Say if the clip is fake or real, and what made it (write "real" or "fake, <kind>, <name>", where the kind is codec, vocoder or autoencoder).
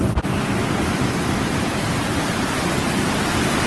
real